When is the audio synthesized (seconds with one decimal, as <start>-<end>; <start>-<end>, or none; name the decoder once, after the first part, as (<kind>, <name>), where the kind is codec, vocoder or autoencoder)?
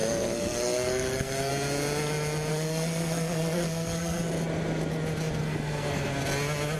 0.0-1.5 (codec, SNAC); 2.5-4.2; 5.4-6.1